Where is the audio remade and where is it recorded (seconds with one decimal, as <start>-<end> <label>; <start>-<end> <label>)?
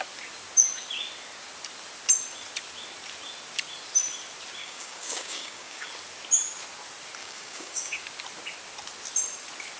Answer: 0.0-4.6 recorded; 4.6-5.9 remade; 5.9-7.2 recorded; 7.2-8.0 remade; 8.0-9.8 recorded